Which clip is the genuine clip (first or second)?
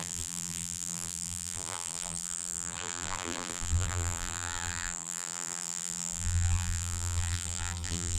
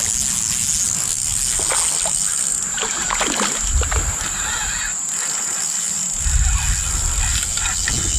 second